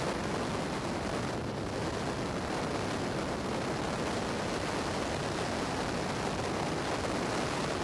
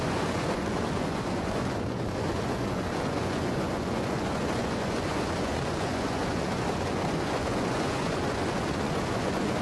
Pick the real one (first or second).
first